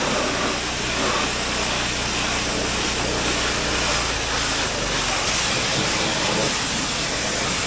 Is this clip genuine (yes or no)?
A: yes